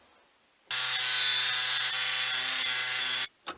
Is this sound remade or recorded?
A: recorded